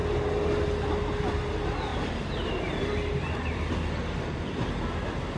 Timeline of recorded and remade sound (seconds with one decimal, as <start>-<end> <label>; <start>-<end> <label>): 0.0-1.9 recorded; 1.9-5.4 remade